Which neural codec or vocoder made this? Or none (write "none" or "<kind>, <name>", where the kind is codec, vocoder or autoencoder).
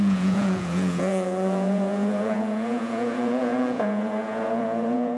vocoder, Vocos